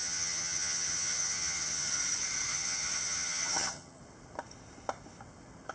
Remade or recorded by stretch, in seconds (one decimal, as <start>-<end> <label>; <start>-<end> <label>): 0.0-2.0 remade; 2.0-2.5 recorded; 2.5-4.0 remade; 4.0-5.7 recorded